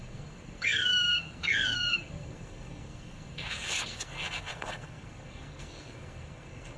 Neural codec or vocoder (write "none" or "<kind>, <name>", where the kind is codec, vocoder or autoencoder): codec, SNAC